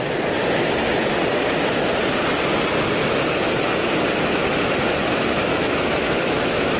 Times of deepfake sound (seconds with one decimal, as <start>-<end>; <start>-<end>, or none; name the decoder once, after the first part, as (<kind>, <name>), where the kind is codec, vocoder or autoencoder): 5.5-6.8 (autoencoder, DAC-VAE)